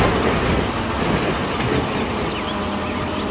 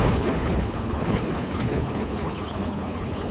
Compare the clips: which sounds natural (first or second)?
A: first